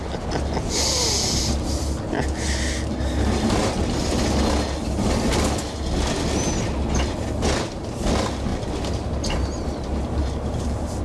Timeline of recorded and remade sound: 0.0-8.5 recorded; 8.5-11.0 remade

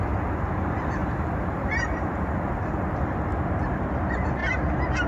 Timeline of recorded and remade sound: 0.0-1.0 recorded; 1.0-2.3 remade; 2.3-3.3 recorded; 3.3-3.9 remade; 3.9-5.1 recorded

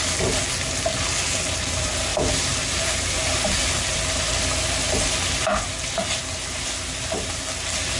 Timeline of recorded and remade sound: 0.0-2.1 recorded; 2.1-4.0 remade; 4.0-8.0 recorded

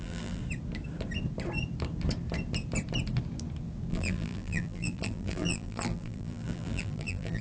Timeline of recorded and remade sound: 0.0-0.4 remade; 0.4-3.9 recorded; 3.9-7.4 remade

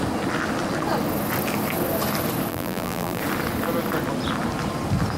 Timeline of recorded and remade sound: 0.0-2.5 recorded; 2.5-3.2 remade; 3.2-5.2 recorded

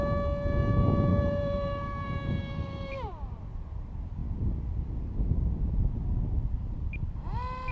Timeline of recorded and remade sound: 0.0-1.1 recorded; 1.1-3.4 remade; 3.4-7.7 recorded